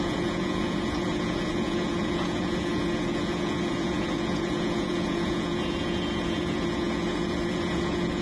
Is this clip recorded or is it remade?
remade